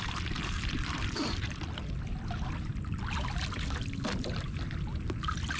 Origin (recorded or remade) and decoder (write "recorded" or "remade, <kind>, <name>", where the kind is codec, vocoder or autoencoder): recorded